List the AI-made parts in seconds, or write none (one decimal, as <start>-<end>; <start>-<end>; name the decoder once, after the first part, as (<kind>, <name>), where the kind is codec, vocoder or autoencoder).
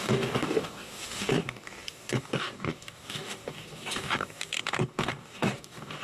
0.0-6.0 (codec, DAC)